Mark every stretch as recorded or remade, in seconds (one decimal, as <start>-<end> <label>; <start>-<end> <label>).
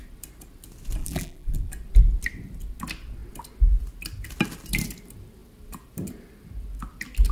0.0-1.0 recorded; 1.0-1.7 remade; 1.7-7.3 recorded